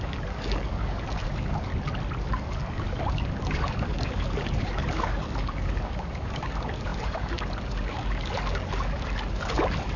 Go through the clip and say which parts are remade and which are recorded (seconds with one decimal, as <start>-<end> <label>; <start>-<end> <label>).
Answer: 0.0-1.7 remade; 1.7-2.2 recorded; 2.2-10.0 remade